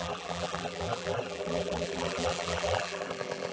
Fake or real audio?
fake